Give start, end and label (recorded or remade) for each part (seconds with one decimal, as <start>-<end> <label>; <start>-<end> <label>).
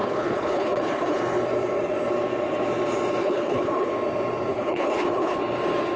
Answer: 0.0-1.2 remade; 1.2-3.2 recorded; 3.2-3.9 remade; 3.9-4.5 recorded; 4.5-5.4 remade; 5.4-6.0 recorded